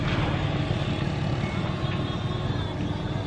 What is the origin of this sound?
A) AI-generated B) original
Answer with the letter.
B